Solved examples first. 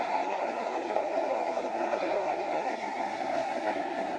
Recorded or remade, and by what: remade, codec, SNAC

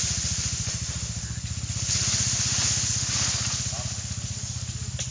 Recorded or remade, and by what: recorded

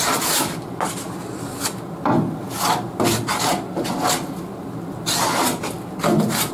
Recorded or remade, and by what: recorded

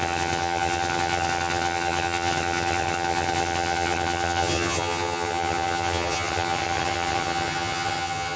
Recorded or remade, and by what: remade, vocoder, HiFi-GAN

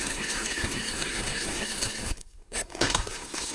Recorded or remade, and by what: remade, codec, SNAC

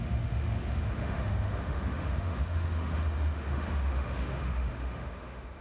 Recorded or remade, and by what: remade, autoencoder, DAC-VAE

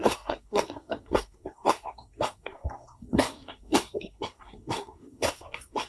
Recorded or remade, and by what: remade, codec, SNAC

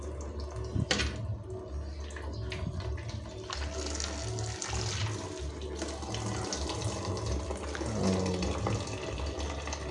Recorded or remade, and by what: recorded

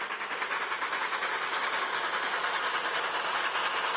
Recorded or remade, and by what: recorded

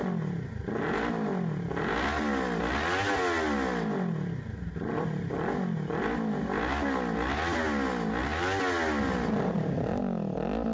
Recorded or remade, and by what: recorded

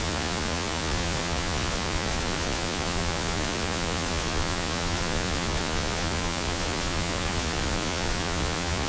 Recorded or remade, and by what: remade, vocoder, Vocos